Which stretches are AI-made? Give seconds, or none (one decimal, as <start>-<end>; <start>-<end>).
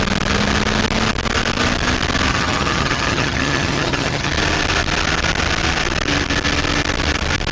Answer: 2.3-4.3